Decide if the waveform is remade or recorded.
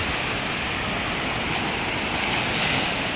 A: recorded